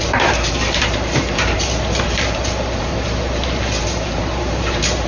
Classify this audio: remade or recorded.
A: remade